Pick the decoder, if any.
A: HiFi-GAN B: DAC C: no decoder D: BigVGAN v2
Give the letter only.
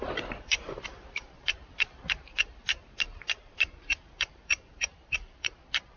D